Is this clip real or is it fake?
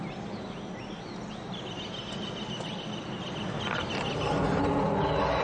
real